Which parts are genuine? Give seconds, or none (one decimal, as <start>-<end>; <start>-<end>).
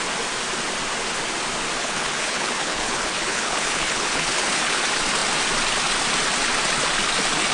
0.0-1.8; 4.8-7.5